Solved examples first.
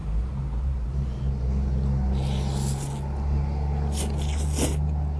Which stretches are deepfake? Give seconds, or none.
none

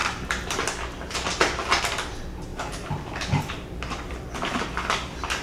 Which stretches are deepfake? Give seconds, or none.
2.5-4.1 (vocoder, BigVGAN v2)

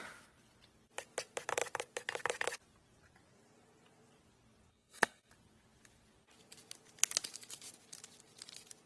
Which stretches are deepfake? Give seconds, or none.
4.7-5.3 (codec, SNAC)

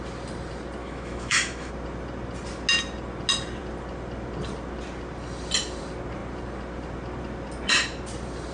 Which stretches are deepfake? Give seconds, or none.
0.8-1.7 (autoencoder, DAC-VAE)

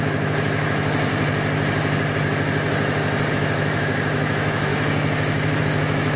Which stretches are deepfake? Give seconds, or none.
0.0-1.1 (autoencoder, DAC-VAE); 3.3-4.7; 5.6-6.2

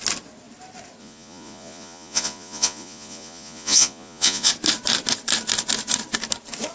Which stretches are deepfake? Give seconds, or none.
1.0-4.5 (vocoder, Vocos)

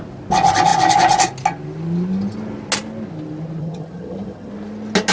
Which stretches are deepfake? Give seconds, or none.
3.6-4.5 (vocoder, HiFi-GAN)

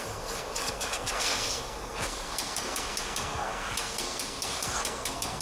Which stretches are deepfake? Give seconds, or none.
0.0-5.4 (codec, SNAC)